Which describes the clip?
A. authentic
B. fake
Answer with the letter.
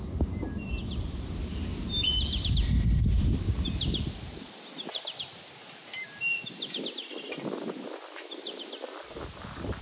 A